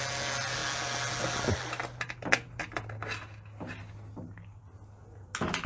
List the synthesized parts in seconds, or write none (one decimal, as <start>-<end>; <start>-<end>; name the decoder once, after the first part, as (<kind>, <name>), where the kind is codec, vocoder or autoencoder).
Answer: none